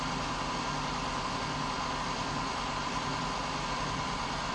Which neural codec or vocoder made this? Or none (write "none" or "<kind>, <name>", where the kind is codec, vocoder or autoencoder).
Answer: vocoder, BigVGAN v2